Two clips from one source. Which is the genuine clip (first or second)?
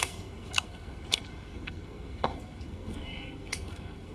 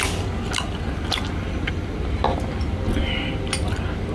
second